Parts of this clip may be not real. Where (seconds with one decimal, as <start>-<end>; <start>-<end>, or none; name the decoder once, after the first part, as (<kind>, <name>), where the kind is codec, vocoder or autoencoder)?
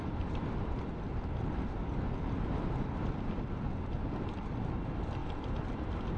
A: none